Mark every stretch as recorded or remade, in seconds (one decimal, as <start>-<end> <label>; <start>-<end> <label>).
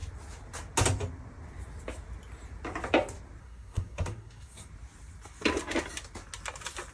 0.0-3.4 recorded; 3.4-4.7 remade; 4.7-6.9 recorded